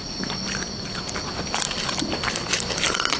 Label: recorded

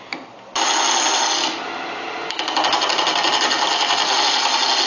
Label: recorded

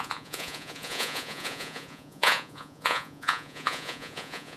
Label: remade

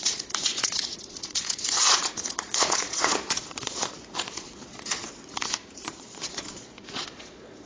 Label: remade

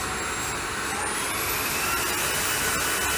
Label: recorded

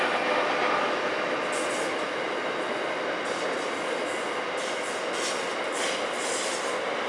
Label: recorded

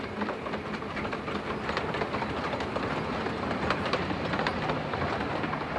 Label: recorded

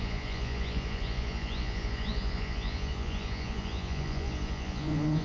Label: remade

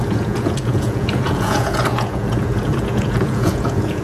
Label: remade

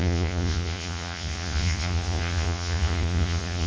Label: remade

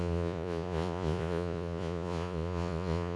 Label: remade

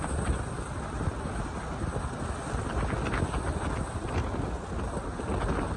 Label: recorded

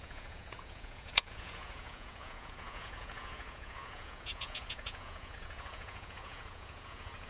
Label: remade